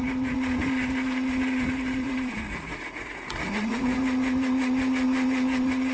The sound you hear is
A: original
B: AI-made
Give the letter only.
B